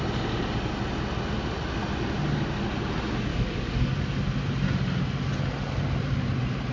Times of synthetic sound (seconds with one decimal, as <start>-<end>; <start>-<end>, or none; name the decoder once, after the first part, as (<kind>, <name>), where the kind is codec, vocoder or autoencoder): 3.3-3.9 (codec, DAC)